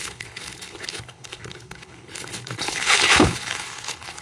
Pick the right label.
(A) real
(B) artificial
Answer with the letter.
B